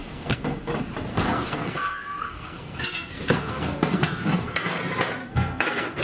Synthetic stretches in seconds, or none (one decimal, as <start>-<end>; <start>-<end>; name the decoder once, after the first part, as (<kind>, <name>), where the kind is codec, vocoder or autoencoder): 0.0-0.7 (codec, SNAC); 1.1-4.7; 5.2-6.0